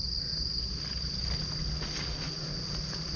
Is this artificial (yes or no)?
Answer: no